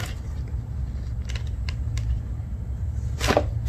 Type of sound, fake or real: real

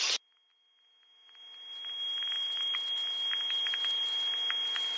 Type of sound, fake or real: real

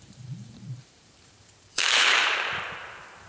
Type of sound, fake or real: fake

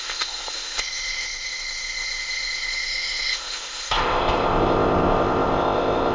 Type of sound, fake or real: fake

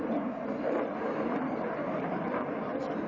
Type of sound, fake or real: real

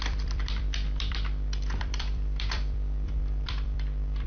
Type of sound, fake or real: fake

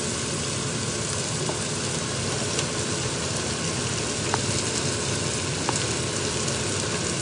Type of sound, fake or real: real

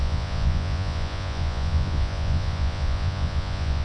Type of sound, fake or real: fake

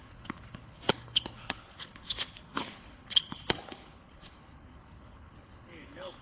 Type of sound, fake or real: fake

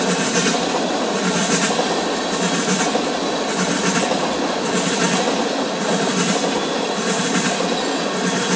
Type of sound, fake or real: real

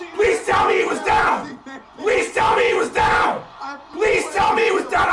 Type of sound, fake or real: fake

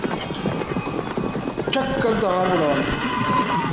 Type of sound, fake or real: real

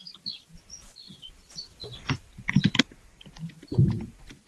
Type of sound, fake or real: real